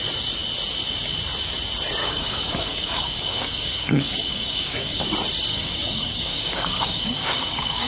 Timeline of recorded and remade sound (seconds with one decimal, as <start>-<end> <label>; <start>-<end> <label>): 0.0-2.0 recorded; 2.0-5.0 remade; 5.0-5.5 recorded; 5.5-7.9 remade